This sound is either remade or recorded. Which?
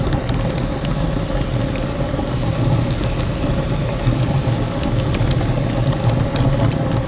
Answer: recorded